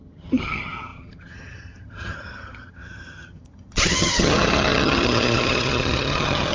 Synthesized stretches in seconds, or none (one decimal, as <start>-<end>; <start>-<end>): 0.0-6.5